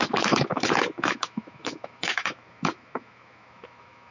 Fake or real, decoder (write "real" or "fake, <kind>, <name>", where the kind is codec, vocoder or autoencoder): fake, autoencoder, DAC-VAE